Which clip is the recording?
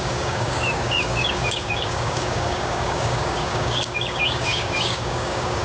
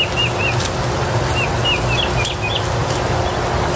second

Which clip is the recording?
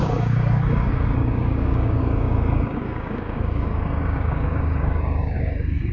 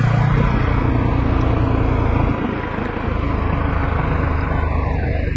second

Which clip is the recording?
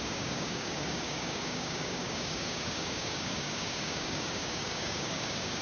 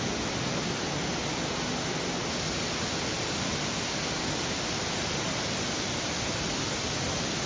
second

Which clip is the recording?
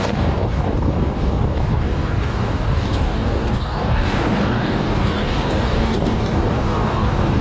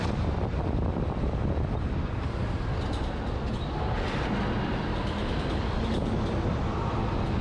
second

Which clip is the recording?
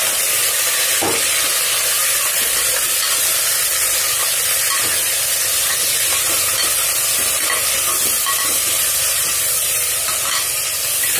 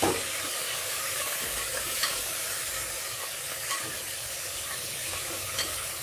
first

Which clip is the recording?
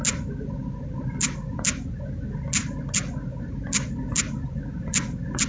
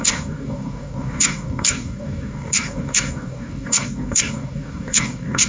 first